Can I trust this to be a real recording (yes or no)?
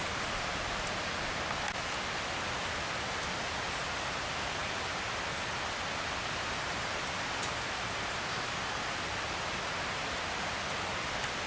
yes